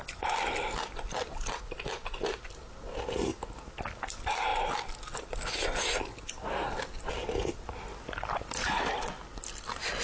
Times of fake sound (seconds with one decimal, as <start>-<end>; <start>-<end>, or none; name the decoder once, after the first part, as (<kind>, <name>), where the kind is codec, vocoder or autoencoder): none